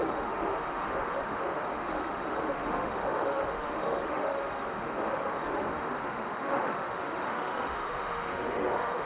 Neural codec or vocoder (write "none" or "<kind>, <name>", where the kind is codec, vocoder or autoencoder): autoencoder, DAC-VAE